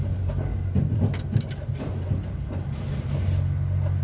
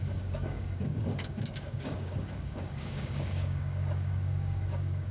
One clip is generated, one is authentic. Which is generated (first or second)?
second